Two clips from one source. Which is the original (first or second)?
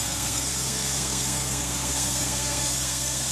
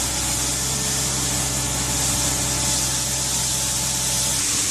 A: second